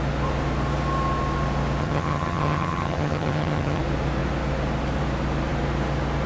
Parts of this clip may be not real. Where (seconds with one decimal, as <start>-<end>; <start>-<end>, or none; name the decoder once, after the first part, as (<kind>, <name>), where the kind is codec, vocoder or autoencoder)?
1.8-3.8 (vocoder, HiFi-GAN)